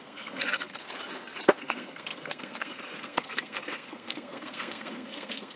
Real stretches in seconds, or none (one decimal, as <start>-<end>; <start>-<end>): 0.8-1.6